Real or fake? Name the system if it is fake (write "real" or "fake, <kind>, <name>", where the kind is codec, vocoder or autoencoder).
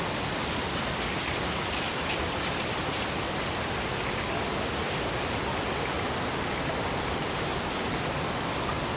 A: real